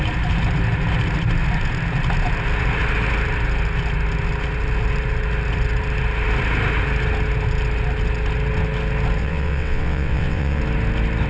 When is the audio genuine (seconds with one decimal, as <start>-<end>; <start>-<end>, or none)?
0.0-9.2; 10.6-11.3